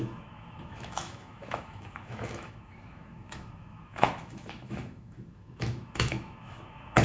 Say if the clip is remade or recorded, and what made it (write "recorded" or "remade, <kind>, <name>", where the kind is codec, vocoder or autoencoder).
remade, autoencoder, DAC-VAE